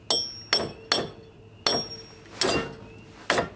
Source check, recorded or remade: recorded